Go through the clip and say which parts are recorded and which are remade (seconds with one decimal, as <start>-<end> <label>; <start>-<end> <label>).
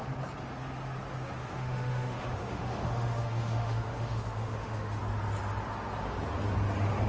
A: 0.0-1.4 recorded; 1.4-5.0 remade; 5.0-7.1 recorded